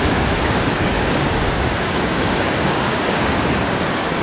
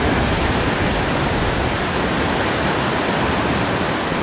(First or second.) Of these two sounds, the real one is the second